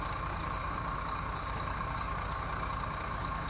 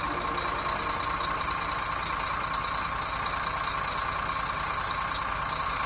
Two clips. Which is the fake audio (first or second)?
first